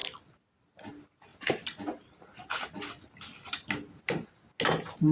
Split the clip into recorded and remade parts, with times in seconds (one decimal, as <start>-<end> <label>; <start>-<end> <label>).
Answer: 0.0-5.1 recorded

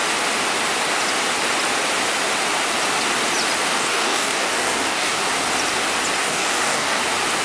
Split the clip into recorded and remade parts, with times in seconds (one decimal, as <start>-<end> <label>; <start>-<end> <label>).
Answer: 0.0-3.7 recorded; 3.7-5.2 remade; 5.2-6.2 recorded; 6.2-7.0 remade; 7.0-7.4 recorded